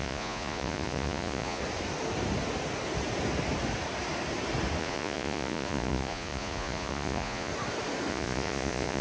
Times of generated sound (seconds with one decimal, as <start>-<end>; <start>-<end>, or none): 0.0-1.6; 4.8-7.5; 8.1-9.0